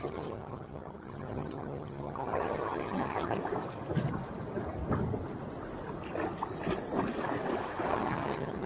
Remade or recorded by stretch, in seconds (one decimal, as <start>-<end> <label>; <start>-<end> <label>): 0.0-3.4 remade; 3.4-7.9 recorded; 7.9-8.7 remade